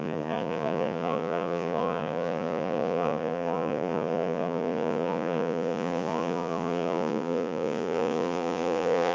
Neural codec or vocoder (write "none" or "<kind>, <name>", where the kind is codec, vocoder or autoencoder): vocoder, Vocos